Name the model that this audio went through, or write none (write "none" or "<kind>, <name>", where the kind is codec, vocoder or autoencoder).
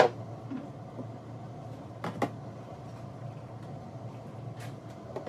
none